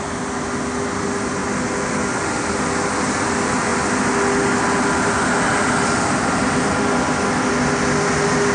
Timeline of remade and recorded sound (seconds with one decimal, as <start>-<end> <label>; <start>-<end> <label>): 0.0-8.5 recorded